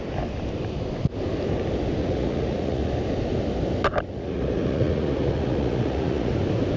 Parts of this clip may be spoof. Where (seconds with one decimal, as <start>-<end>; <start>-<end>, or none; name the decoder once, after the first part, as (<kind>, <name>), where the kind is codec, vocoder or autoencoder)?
2.0-2.9 (vocoder, Vocos); 4.1-6.3